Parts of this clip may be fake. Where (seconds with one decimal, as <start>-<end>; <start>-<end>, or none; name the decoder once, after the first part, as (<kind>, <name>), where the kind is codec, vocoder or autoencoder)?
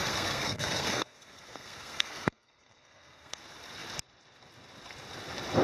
0.0-3.4 (codec, SNAC)